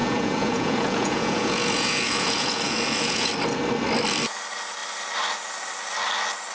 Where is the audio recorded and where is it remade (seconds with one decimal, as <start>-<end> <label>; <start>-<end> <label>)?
0.0-3.3 remade; 3.3-6.5 recorded